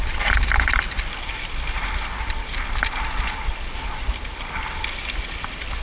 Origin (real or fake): real